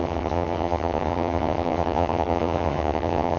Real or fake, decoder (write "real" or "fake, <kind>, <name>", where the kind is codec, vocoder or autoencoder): fake, vocoder, HiFi-GAN